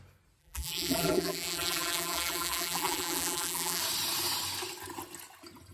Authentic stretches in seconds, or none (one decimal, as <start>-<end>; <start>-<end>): 0.0-0.4; 3.8-5.7